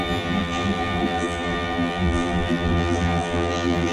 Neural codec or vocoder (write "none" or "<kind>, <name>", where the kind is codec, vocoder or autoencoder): vocoder, BigVGAN v2